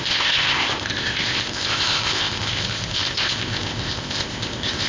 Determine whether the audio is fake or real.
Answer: fake